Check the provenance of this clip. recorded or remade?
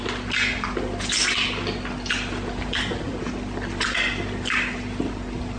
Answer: recorded